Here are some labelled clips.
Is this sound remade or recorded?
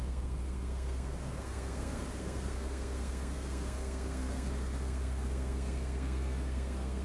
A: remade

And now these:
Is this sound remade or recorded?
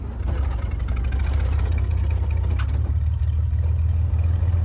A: recorded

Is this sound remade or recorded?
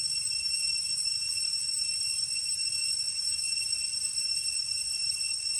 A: recorded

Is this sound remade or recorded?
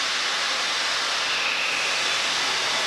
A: recorded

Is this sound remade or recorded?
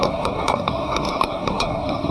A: remade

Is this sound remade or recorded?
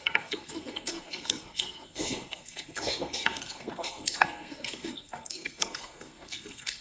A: remade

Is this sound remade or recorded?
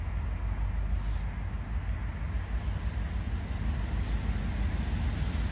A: recorded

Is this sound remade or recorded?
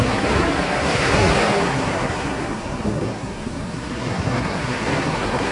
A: remade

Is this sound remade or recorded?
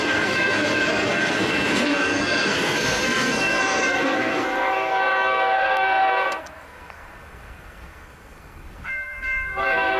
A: remade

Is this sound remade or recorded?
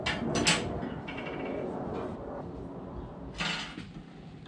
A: recorded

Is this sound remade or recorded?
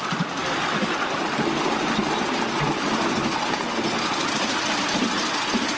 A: recorded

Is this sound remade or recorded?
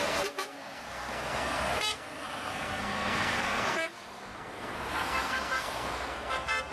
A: remade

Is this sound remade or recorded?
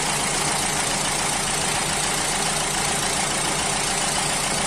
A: recorded